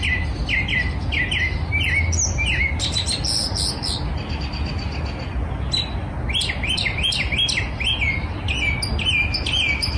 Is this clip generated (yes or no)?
no